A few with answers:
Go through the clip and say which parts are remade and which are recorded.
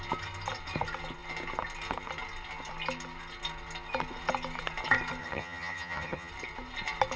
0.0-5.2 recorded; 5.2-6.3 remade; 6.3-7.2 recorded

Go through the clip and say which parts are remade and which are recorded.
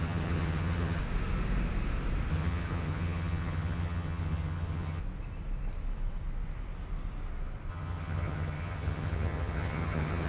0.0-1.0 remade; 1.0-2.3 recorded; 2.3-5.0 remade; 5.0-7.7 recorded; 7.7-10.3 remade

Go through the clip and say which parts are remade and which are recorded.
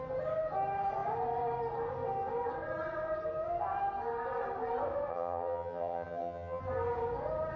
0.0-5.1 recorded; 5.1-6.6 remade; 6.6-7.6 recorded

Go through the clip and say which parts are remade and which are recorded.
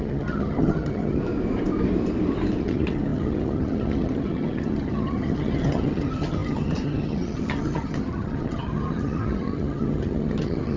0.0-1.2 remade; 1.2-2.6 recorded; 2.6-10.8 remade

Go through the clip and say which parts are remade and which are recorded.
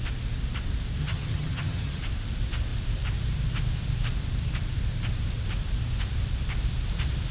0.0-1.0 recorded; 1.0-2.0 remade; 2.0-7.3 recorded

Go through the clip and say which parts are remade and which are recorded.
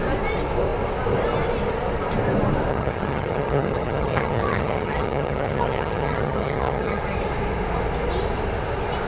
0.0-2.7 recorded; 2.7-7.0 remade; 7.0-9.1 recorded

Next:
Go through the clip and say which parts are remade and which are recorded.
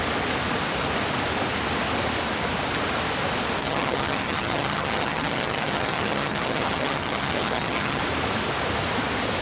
0.0-3.6 recorded; 3.6-8.0 remade; 8.0-9.4 recorded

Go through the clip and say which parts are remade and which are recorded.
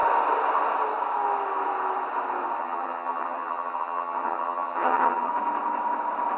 0.0-2.6 recorded; 2.6-5.3 remade; 5.3-6.4 recorded